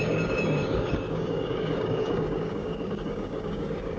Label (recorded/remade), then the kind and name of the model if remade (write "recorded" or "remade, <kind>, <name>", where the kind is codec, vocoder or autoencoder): remade, codec, DAC